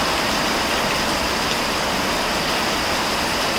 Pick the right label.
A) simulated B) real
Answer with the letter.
B